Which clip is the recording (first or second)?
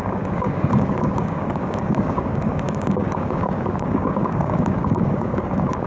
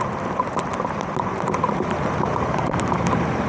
second